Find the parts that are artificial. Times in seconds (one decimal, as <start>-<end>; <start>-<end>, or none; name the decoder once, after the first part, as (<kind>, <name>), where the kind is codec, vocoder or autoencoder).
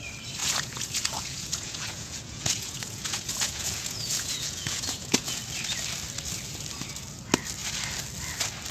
0.4-5.4 (vocoder, Vocos)